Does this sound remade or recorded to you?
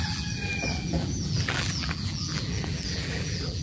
remade